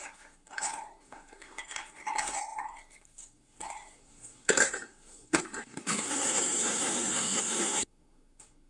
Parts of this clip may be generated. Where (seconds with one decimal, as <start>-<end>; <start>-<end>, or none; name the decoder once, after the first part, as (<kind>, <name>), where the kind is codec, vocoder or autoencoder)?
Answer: 0.0-8.7 (codec, SNAC)